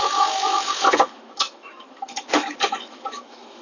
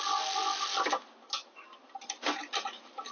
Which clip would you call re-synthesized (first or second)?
first